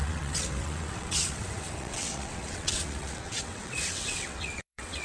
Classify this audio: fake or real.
fake